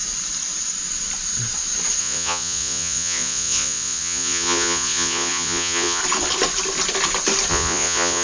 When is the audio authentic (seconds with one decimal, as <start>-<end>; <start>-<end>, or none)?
0.0-2.0; 6.0-7.5